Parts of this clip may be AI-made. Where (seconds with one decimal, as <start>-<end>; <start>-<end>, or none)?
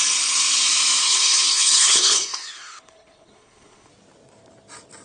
1.0-3.9